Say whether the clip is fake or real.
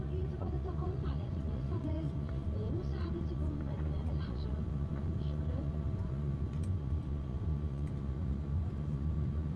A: fake